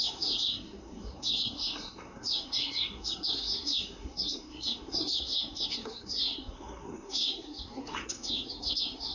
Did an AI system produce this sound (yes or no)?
yes